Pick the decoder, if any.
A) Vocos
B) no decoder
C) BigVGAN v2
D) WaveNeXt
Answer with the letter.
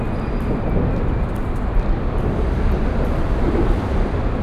B